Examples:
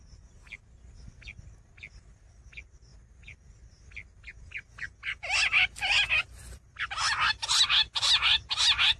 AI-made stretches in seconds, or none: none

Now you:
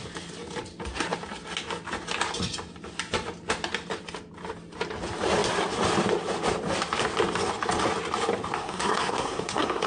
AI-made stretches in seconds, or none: 8.6-9.9